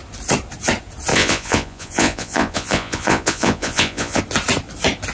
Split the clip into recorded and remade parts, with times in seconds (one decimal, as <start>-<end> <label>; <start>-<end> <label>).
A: 0.0-1.1 recorded; 1.1-4.2 remade; 4.2-5.1 recorded